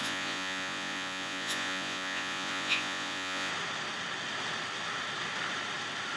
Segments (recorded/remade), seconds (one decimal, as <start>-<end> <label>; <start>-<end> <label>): 0.0-3.5 remade; 3.5-6.2 recorded